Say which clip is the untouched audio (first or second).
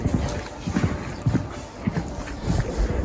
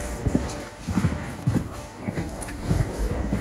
first